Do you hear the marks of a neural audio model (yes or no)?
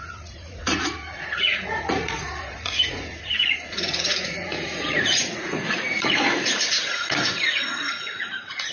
yes